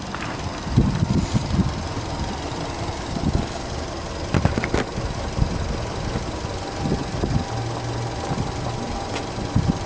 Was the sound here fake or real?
real